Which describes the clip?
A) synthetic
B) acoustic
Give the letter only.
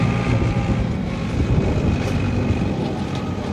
A